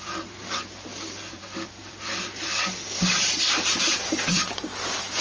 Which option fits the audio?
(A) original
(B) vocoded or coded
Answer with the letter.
B